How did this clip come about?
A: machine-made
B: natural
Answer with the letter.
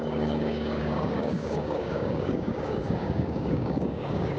A